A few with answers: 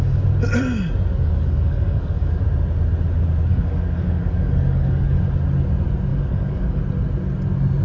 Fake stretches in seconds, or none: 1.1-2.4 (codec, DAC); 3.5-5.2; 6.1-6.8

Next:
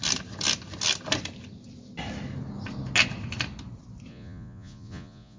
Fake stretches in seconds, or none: 4.1-5.4 (vocoder, Vocos)

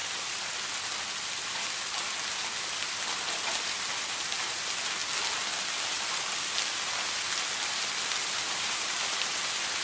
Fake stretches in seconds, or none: none

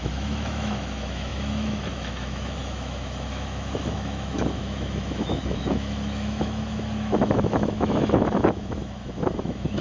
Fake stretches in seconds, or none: 0.0-9.8 (autoencoder, DAC-VAE)